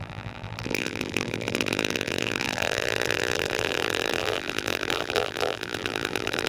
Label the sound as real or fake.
fake